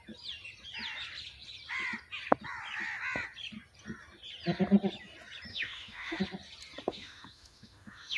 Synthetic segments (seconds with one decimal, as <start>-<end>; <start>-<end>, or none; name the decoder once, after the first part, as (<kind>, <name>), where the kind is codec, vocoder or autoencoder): 5.5-6.2 (autoencoder, DAC-VAE); 6.9-8.2